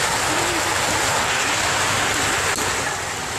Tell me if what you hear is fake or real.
real